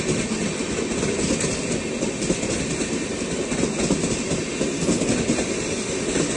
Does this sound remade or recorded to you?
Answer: recorded